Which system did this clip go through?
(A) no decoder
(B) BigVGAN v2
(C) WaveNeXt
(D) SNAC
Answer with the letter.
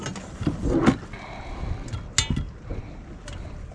A